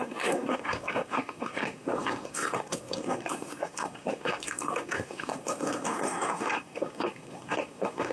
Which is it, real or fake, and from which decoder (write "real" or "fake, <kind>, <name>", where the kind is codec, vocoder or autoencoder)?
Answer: fake, codec, SNAC